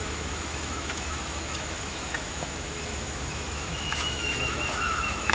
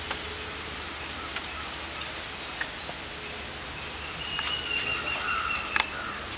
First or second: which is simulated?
first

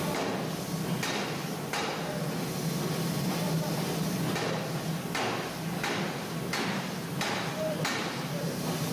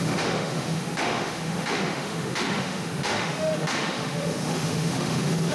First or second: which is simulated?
second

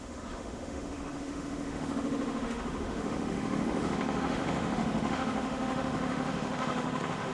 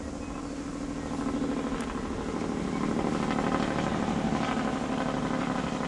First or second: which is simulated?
first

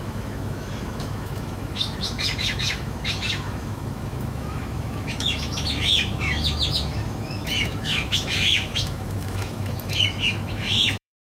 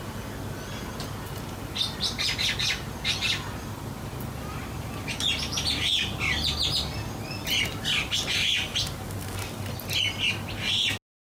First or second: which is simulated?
first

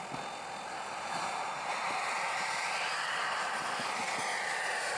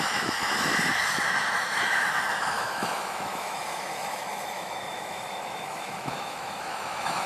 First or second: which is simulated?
second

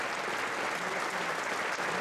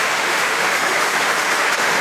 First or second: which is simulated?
second